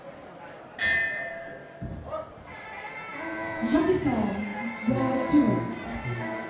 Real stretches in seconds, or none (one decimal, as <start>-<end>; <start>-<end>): 0.0-0.8; 1.4-3.1; 3.8-6.5